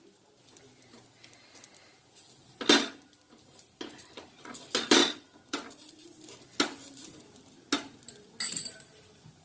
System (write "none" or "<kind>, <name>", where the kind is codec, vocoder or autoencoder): none